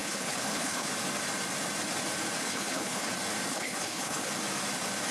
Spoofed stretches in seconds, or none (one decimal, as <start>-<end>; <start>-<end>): 0.0-0.9; 2.4-3.1; 3.5-4.3